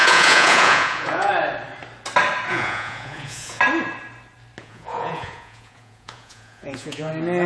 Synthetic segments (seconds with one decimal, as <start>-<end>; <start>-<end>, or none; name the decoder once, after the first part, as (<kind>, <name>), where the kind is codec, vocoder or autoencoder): 0.0-1.3 (vocoder, Vocos); 2.5-3.6; 4.6-7.1